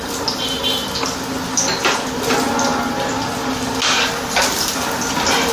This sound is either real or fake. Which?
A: real